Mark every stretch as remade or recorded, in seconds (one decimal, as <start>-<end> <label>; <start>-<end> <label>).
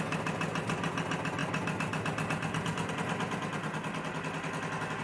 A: 0.0-5.0 recorded